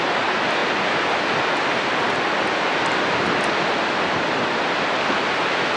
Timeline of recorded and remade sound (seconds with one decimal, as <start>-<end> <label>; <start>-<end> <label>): 0.0-5.8 recorded